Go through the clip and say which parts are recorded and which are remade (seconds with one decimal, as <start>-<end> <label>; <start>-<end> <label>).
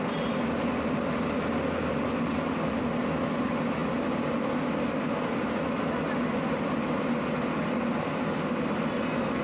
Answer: 0.0-9.4 recorded